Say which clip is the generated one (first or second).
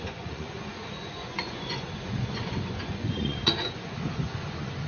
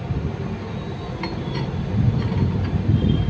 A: first